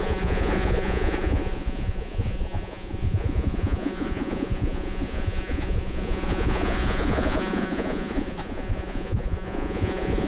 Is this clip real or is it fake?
fake